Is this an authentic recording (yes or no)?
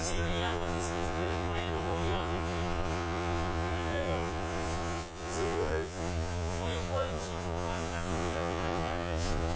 no